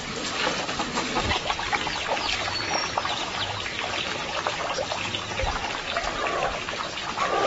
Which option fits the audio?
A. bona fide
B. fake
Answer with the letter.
A